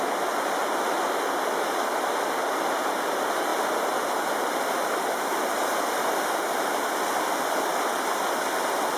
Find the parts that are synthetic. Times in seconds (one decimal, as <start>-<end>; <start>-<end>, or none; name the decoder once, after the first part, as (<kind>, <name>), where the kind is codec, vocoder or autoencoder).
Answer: none